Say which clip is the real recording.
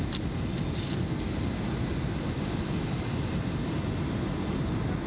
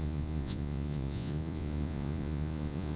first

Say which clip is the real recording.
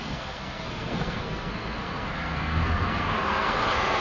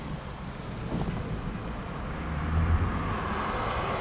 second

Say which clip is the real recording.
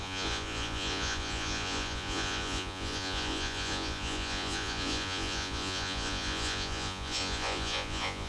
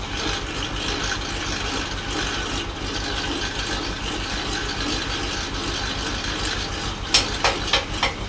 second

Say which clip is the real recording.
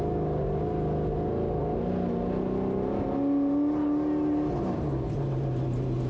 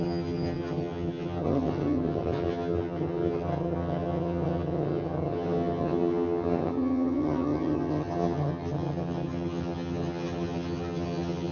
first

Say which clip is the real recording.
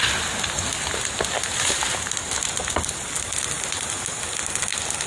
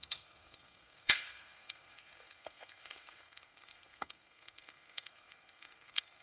first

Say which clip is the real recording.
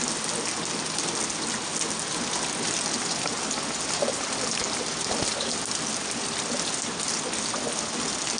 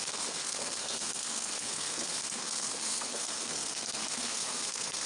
first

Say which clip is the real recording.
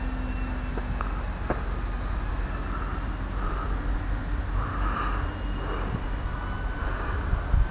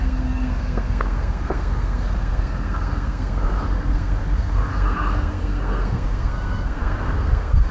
first